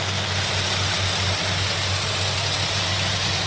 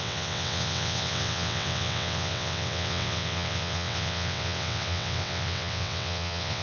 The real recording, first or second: first